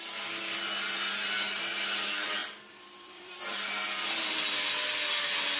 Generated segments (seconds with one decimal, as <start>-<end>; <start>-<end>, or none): 2.4-3.4